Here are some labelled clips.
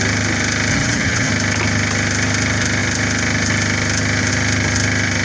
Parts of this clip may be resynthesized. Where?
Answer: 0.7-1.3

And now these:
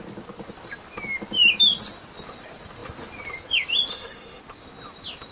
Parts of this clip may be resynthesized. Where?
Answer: 3.9-4.4

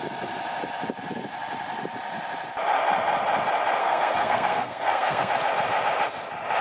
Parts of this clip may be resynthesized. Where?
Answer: 3.8-5.3

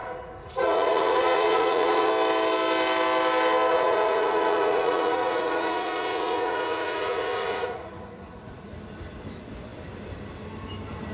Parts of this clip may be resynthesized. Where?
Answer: 0.0-2.1; 3.7-8.7

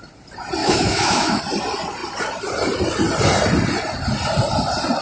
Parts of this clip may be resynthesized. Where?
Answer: 0.6-1.4

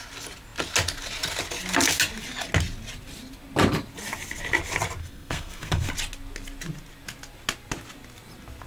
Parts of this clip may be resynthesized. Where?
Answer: 5.0-5.9

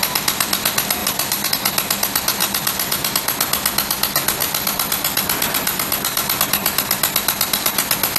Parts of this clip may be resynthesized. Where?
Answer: 1.0-1.5; 2.4-3.1; 4.4-6.4

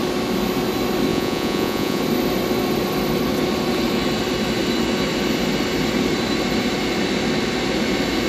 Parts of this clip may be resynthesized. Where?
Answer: 1.1-2.0